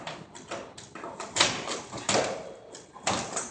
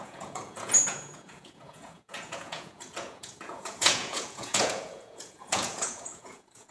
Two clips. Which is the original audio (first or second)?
first